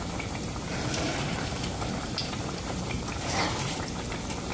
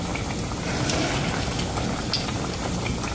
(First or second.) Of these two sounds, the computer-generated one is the first